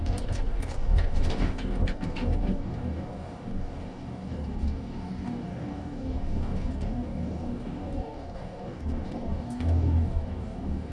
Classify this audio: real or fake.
fake